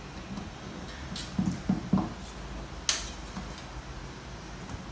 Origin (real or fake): real